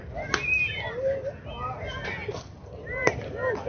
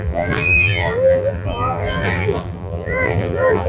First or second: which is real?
first